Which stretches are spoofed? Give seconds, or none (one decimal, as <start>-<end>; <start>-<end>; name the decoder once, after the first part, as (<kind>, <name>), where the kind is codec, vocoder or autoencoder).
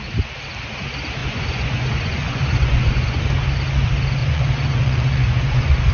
1.2-3.2 (vocoder, Vocos); 4.2-5.9